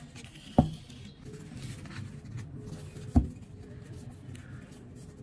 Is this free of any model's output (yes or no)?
yes